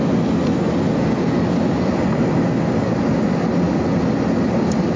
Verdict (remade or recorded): recorded